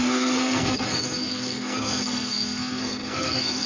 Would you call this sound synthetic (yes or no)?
yes